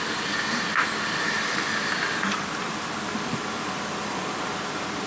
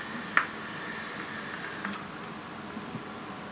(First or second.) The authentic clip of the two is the second